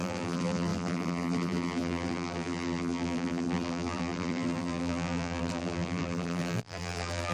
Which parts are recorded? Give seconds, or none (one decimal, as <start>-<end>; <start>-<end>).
none